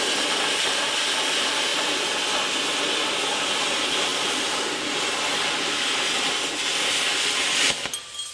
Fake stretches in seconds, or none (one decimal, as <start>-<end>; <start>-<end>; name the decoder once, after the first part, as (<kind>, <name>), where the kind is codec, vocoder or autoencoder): none